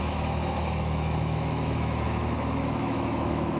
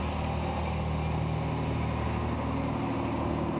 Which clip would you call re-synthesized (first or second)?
first